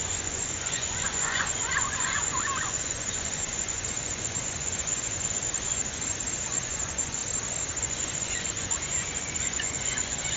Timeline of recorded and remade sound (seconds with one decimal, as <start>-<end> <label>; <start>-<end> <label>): 0.0-7.2 remade; 7.2-7.8 recorded; 7.8-10.4 remade